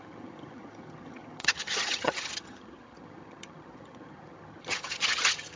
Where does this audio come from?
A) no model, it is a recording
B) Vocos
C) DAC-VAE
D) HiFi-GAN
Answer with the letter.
D